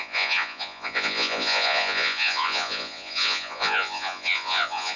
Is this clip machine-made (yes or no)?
yes